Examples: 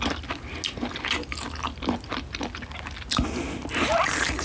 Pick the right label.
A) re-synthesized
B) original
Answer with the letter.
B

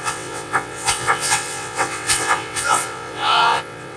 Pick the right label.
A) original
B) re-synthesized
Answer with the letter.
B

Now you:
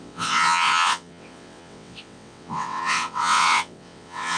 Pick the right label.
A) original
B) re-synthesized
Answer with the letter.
B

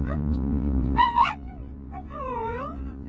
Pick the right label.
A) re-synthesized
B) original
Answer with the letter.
A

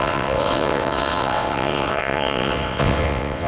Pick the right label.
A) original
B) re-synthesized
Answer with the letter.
B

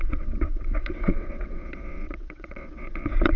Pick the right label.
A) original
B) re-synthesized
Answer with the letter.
B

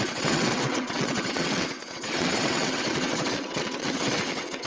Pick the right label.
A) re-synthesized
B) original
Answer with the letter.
A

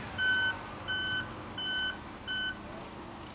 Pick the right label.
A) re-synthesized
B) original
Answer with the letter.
B